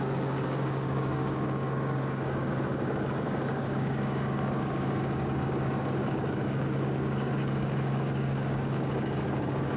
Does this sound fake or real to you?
fake